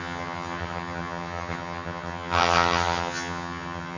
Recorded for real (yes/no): no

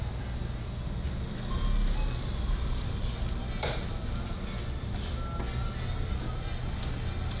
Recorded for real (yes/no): yes